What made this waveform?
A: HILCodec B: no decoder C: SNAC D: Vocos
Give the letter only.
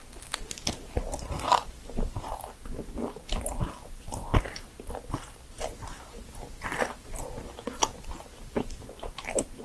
B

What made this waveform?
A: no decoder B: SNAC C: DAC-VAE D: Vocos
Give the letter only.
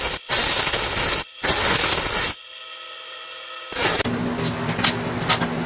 A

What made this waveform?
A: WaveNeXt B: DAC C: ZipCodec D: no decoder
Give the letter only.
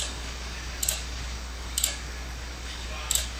B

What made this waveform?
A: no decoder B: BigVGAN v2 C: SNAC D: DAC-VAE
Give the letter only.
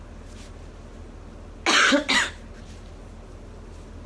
A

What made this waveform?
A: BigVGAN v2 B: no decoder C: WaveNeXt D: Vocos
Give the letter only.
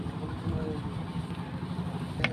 B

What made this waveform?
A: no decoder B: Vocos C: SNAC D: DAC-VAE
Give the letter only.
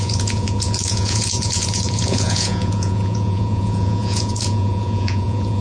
B